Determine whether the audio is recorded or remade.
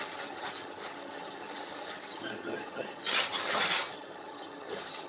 remade